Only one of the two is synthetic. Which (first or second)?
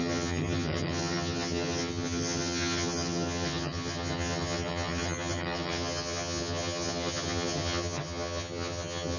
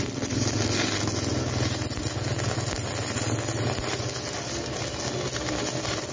first